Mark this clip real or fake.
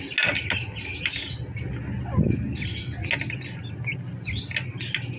real